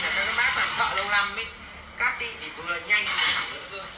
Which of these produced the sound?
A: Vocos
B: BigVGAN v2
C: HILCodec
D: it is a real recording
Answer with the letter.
D